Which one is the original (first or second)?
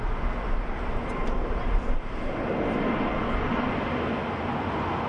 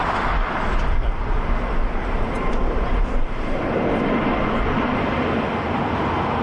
first